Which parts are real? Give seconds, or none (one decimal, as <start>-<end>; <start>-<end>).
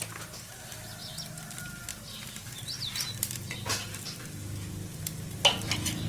0.0-1.9; 2.5-6.1